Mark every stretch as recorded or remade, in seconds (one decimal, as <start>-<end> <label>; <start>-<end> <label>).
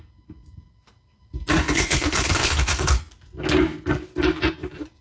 0.0-1.6 recorded; 1.6-3.0 remade; 3.0-5.0 recorded